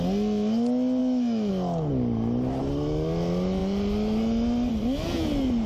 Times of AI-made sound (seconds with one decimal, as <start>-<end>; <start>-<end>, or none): 1.0-1.5